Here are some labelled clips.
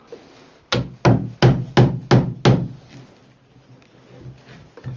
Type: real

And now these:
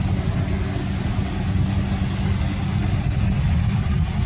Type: real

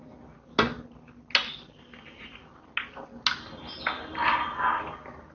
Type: real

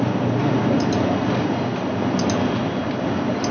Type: real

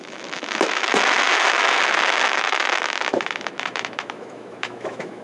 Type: fake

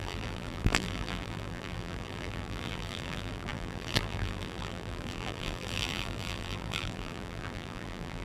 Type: fake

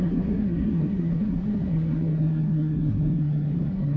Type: fake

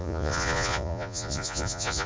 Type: fake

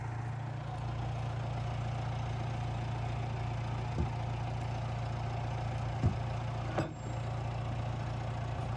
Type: real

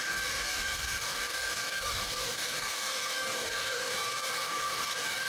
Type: fake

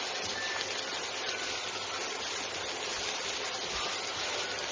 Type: real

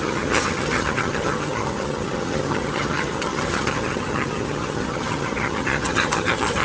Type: fake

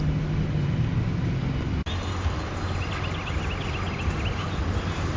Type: real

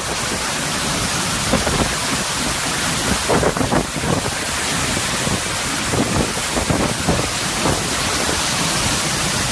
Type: real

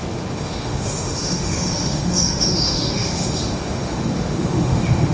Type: fake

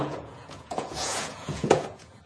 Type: fake